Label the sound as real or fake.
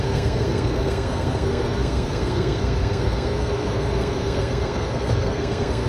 fake